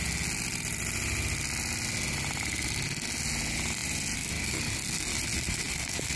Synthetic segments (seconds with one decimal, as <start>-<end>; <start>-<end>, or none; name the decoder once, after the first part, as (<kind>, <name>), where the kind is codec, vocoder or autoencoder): none